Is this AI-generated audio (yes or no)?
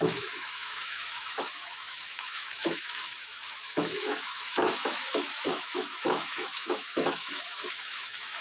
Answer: yes